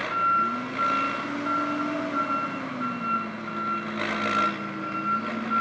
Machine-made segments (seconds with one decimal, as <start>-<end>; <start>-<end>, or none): none